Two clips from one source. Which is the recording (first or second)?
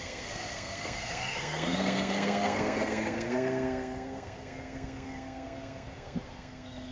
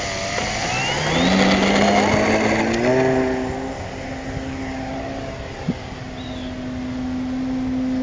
second